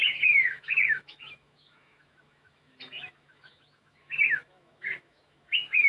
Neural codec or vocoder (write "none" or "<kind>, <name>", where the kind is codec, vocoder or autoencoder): autoencoder, DAC-VAE